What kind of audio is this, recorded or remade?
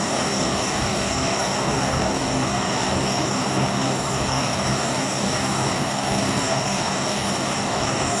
remade